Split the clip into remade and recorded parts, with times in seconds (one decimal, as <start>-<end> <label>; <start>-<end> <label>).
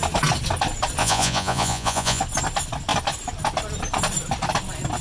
0.0-1.0 recorded; 1.0-2.2 remade; 2.2-5.0 recorded